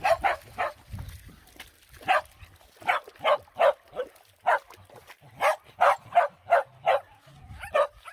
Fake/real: real